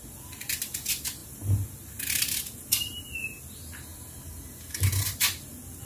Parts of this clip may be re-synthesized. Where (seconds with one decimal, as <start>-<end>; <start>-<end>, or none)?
none